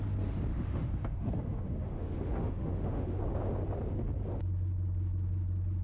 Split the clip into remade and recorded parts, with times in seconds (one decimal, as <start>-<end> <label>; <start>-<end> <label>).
0.0-0.5 recorded; 0.5-3.2 remade; 3.2-5.8 recorded